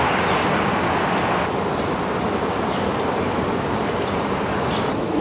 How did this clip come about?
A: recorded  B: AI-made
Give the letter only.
A